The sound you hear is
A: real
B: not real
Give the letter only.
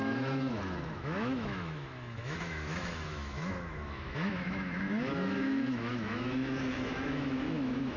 B